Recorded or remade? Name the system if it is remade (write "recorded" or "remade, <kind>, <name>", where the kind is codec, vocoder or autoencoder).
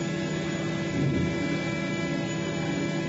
recorded